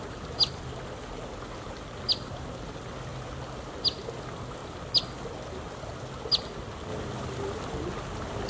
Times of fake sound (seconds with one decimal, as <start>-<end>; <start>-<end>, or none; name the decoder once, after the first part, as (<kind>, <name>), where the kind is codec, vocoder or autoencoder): none